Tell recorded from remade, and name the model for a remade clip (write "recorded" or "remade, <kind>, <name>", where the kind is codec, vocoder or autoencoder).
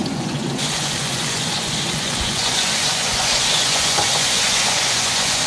remade, vocoder, Vocos